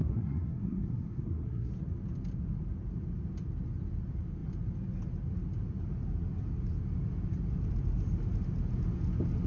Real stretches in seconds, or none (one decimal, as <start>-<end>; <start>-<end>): 1.7-9.5